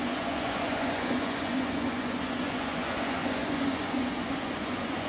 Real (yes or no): no